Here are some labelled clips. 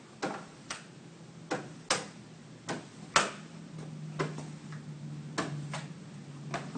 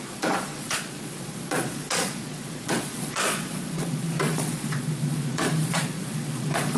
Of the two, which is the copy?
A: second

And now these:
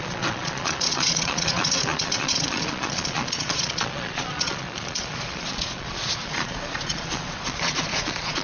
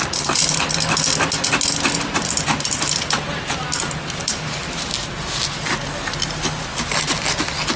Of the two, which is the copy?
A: first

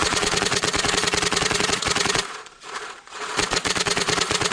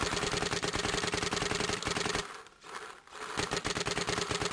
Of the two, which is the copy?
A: first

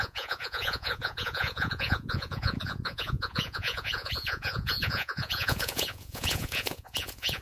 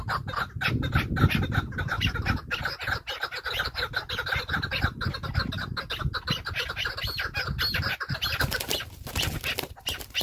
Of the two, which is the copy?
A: first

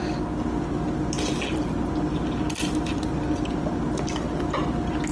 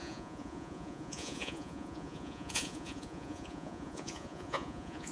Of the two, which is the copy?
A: second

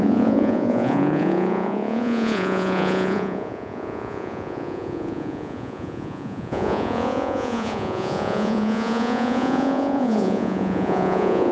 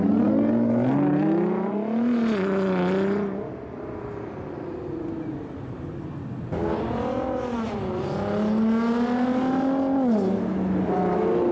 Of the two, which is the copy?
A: first